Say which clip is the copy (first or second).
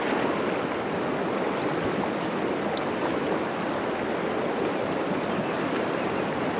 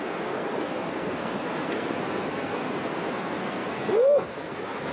second